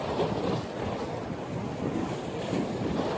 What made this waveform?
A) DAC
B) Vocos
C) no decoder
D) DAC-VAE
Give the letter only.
C